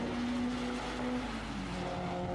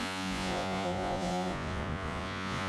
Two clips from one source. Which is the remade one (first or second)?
second